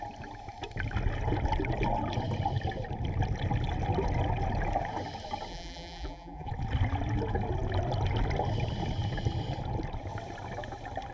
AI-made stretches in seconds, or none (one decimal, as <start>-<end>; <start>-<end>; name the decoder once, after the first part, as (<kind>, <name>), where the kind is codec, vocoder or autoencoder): 5.5-6.5 (vocoder, BigVGAN v2)